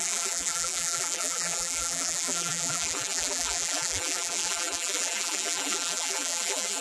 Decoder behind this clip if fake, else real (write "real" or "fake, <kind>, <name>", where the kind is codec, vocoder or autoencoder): fake, vocoder, BigVGAN v2